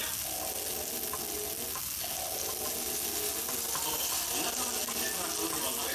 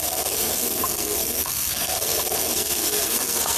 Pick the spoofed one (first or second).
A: second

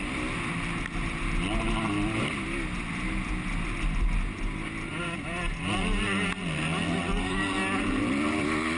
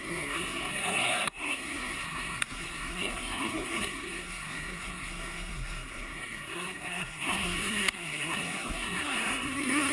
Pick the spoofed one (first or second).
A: second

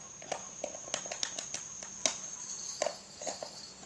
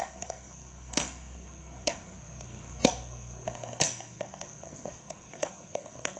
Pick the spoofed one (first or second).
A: second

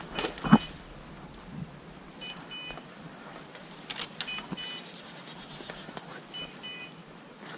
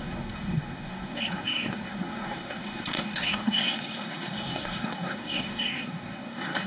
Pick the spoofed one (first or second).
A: second